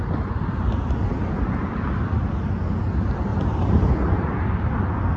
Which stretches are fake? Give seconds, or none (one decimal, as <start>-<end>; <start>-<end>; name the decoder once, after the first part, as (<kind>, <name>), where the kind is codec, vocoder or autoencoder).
3.3-3.9 (vocoder, BigVGAN v2)